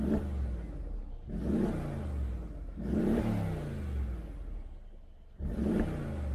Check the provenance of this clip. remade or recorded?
recorded